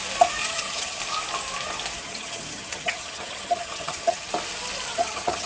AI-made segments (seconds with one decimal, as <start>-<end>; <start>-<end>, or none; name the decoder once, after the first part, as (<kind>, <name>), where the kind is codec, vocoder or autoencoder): 0.4-1.0 (vocoder, HiFi-GAN); 2.0-4.3; 4.9-5.5